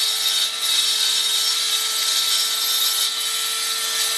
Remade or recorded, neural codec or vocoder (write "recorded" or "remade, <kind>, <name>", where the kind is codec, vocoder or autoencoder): recorded